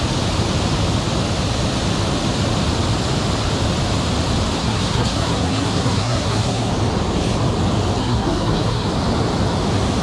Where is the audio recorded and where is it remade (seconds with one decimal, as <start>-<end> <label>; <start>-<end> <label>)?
0.0-4.6 recorded; 4.6-6.7 remade; 6.7-8.0 recorded; 8.0-8.9 remade; 8.9-10.0 recorded